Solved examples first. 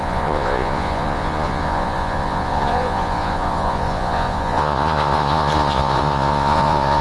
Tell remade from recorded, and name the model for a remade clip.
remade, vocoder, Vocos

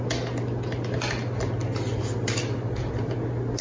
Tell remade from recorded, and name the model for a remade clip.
recorded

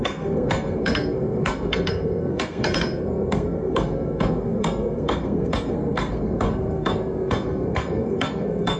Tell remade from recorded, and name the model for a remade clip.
remade, codec, SNAC